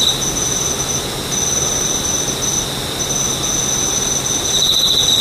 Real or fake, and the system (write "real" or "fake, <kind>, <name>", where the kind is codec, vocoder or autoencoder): real